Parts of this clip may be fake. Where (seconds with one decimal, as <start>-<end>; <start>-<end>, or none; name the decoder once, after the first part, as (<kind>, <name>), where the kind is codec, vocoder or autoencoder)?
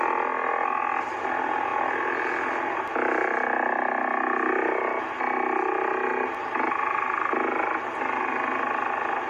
none